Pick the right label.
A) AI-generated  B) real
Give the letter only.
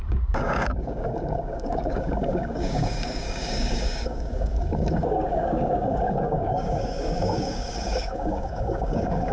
A